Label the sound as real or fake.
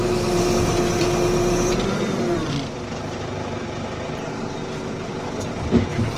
fake